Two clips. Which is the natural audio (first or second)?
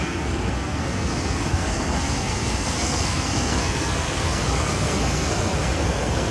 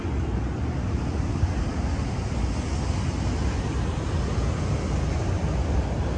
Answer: second